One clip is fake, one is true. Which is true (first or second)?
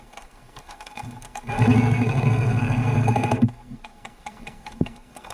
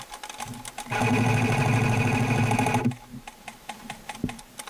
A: second